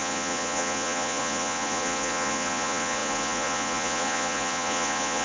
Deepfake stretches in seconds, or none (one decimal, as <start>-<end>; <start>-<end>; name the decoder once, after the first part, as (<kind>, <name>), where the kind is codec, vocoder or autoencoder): 0.0-5.2 (vocoder, Vocos)